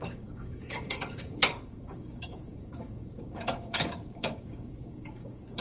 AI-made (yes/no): yes